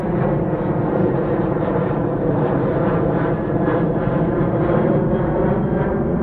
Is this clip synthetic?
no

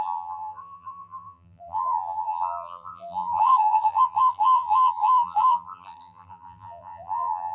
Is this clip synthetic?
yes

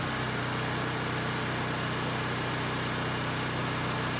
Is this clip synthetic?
no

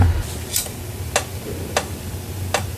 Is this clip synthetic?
no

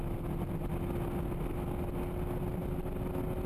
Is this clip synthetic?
no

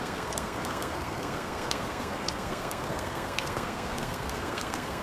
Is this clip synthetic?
yes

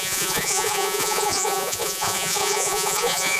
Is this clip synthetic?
yes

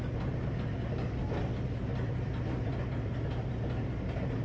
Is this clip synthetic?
no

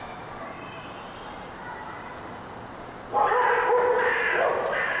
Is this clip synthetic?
no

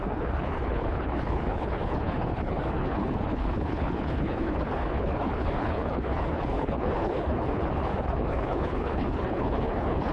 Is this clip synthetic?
yes